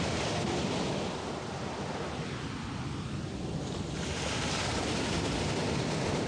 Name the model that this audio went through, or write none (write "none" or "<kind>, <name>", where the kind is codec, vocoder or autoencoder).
none